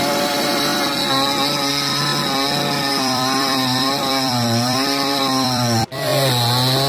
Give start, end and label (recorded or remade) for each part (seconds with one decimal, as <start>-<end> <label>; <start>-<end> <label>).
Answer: 0.0-0.7 remade; 0.7-1.7 recorded; 1.7-2.1 remade; 2.1-2.9 recorded; 2.9-6.1 remade; 6.1-6.9 recorded